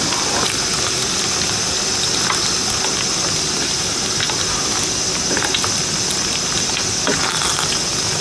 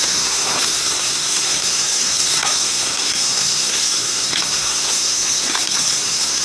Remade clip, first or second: second